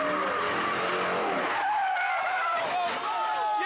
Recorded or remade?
recorded